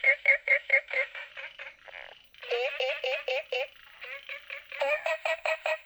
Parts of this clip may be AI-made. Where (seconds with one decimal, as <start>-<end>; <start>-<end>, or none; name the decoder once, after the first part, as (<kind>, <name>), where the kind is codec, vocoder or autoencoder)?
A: 0.0-1.3 (autoencoder, DAC-VAE); 4.8-5.9